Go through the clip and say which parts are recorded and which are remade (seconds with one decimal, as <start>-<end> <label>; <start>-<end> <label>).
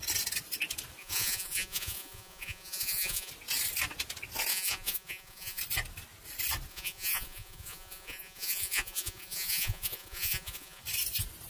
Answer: 0.0-1.0 recorded; 1.0-3.3 remade; 3.3-4.5 recorded; 4.5-5.6 remade; 5.6-6.7 recorded; 6.7-10.8 remade; 10.8-11.5 recorded